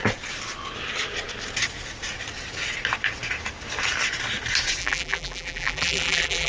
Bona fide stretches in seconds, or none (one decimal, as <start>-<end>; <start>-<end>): 0.0-4.8